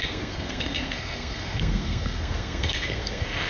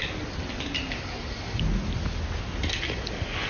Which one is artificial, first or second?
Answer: first